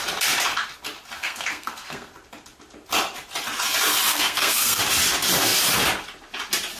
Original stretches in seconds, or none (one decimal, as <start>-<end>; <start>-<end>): 0.0-1.2; 2.1-4.1; 4.8-6.8